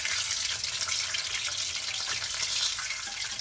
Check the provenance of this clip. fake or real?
real